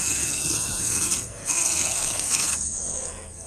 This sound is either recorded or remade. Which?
remade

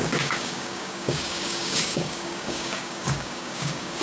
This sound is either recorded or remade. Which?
remade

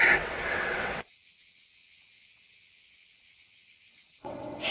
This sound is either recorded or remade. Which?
remade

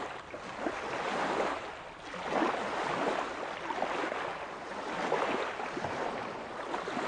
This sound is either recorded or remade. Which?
recorded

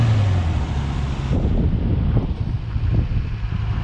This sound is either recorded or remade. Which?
recorded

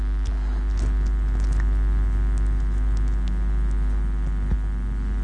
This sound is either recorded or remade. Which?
recorded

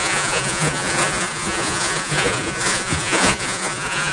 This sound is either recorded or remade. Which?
remade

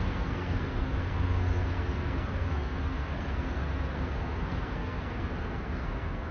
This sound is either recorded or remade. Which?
remade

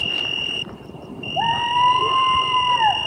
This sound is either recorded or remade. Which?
remade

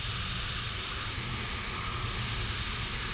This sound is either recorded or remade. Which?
recorded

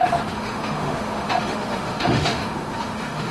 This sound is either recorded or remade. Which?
remade